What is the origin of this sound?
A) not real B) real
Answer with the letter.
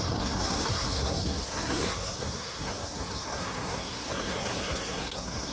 A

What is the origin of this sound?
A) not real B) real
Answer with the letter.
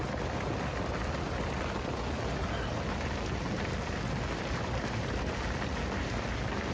B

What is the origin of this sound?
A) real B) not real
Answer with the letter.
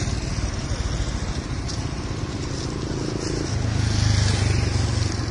A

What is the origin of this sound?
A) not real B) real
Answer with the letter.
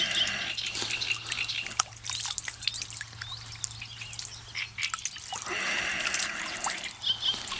B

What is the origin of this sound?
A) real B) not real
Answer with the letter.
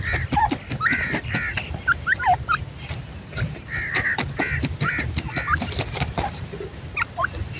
A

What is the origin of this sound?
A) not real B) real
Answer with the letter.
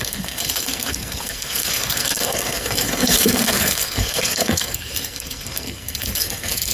A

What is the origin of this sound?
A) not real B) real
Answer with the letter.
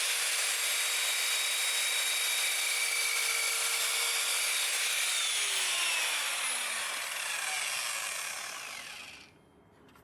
B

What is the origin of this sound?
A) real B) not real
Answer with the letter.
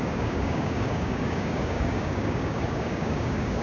B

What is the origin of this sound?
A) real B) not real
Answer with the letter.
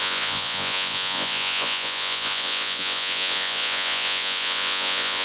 B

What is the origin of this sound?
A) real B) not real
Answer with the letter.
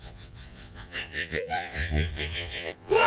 B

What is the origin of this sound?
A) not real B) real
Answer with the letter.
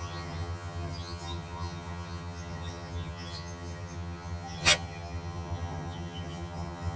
A